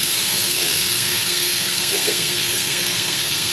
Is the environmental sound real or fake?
fake